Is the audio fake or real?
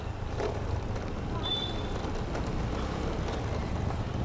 real